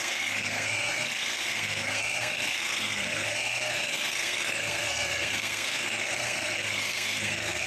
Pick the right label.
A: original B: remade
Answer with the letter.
B